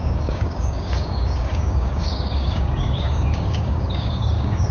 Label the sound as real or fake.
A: fake